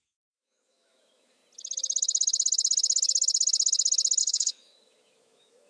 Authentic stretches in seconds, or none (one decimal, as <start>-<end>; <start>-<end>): 1.4-4.2